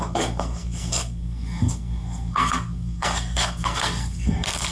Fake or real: fake